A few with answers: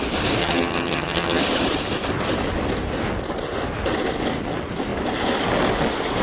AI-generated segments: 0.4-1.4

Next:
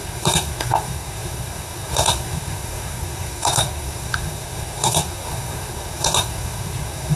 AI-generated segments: 0.0-7.2

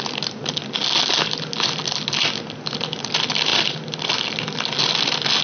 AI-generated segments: 3.5-4.3